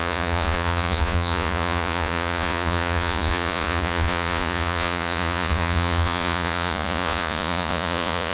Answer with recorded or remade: remade